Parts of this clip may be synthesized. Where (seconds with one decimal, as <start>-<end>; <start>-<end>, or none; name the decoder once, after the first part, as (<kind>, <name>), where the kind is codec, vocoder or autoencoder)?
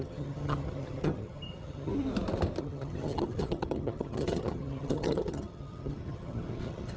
0.0-1.9 (vocoder, HiFi-GAN); 2.6-7.0